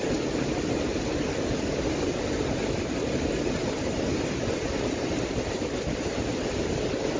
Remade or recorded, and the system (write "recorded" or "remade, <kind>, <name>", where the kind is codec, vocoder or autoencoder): recorded